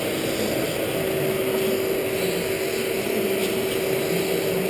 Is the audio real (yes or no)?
yes